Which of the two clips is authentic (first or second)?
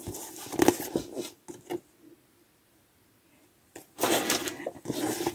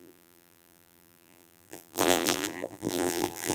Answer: first